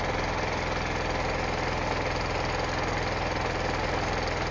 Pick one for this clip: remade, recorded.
recorded